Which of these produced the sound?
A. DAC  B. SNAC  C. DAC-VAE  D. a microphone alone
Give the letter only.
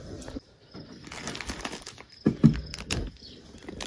D